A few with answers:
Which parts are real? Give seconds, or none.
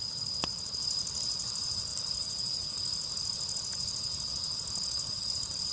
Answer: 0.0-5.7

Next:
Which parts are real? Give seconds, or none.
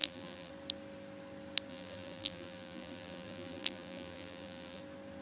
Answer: 0.5-1.7; 4.8-5.2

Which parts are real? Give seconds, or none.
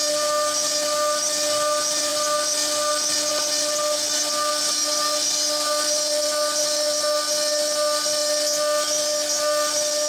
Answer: 0.0-10.1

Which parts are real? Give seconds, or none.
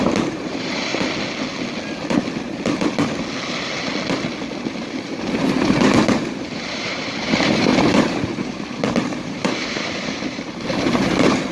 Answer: 0.9-4.7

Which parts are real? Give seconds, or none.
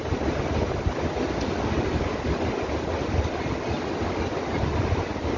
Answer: 0.0-5.4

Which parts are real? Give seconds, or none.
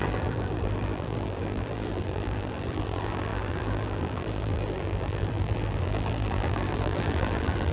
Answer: none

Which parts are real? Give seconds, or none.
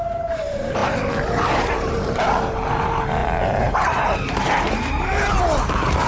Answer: none